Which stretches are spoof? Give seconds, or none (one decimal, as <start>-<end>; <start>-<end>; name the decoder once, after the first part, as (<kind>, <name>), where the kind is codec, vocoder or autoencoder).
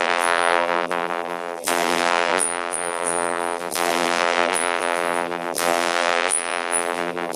0.0-7.4 (vocoder, BigVGAN v2)